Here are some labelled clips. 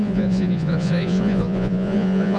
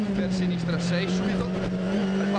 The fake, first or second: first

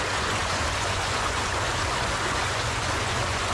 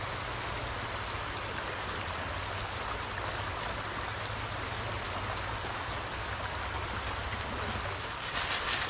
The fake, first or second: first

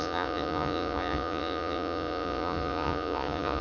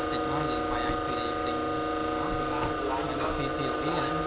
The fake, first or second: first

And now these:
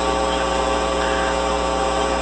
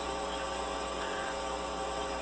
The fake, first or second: second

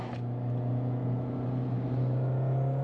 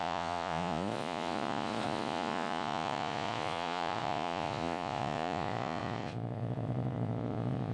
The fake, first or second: second